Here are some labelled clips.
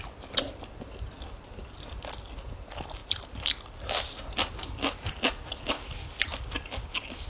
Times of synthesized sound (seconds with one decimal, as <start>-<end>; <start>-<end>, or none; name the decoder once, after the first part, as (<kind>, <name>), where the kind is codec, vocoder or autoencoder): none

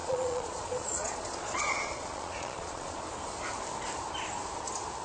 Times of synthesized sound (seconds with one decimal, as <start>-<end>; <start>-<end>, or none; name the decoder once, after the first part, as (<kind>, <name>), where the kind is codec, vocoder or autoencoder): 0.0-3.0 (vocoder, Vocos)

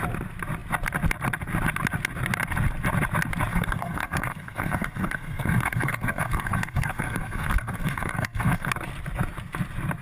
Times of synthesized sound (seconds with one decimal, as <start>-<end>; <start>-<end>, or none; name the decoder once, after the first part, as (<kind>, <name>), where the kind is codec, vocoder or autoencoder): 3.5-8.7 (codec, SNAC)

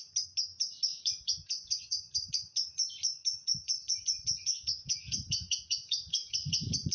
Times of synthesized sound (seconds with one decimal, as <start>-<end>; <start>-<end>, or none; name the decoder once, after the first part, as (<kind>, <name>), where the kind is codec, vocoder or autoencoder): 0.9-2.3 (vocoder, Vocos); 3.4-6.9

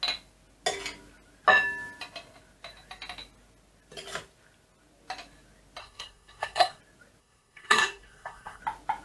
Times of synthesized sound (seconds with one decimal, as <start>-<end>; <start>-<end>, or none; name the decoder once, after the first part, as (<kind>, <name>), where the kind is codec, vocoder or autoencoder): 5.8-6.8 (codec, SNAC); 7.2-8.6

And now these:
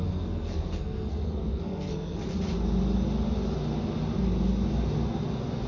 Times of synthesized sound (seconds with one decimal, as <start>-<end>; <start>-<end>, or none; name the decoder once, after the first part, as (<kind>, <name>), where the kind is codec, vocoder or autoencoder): 0.0-2.2 (codec, SNAC)

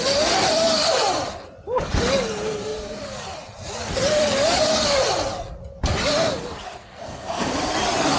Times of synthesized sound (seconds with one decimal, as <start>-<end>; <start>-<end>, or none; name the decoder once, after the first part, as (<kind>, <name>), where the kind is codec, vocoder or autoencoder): 6.8-7.5 (codec, SNAC)